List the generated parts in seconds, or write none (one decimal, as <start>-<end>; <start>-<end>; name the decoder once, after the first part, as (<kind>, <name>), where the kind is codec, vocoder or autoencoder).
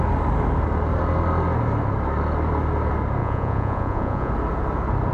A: 3.2-4.3 (vocoder, Vocos)